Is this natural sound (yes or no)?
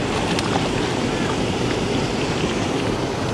yes